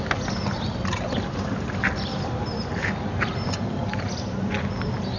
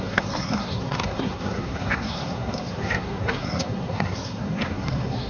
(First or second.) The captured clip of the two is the first